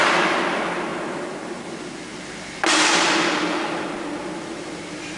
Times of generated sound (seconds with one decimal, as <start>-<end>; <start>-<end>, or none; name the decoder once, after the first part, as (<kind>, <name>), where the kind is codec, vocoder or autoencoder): none